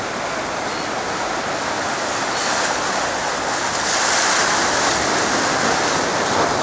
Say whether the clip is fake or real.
real